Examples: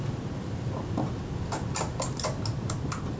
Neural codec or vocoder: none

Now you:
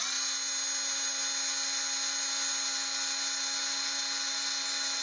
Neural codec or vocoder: none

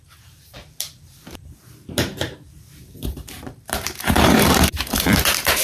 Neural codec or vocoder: vocoder, BigVGAN v2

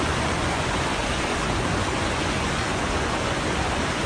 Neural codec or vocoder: vocoder, Vocos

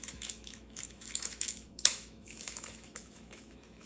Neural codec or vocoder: autoencoder, DAC-VAE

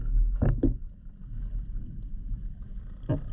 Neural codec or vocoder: none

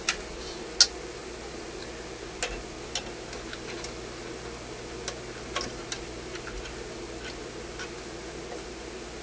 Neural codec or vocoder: none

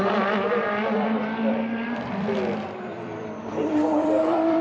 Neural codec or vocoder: vocoder, BigVGAN v2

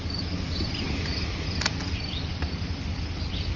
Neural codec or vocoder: none